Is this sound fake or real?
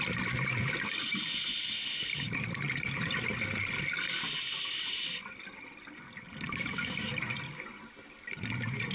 real